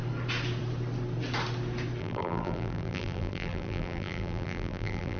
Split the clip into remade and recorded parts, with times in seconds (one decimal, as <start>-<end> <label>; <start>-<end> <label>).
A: 0.0-2.0 recorded; 2.0-5.2 remade